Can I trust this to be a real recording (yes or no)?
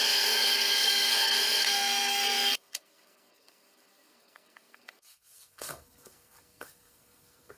no